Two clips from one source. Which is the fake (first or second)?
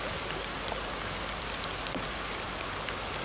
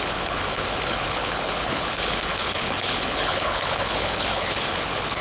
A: second